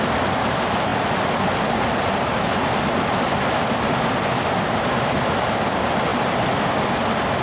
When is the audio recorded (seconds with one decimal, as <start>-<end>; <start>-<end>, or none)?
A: 0.0-7.4